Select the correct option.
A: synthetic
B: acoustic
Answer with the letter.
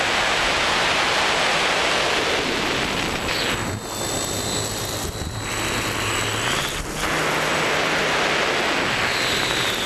B